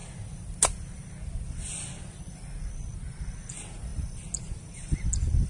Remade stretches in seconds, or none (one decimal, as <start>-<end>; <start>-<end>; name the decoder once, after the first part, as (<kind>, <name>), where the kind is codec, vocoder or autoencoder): none